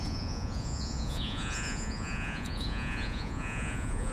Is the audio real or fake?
fake